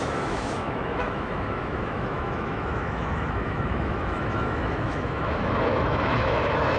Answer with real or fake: fake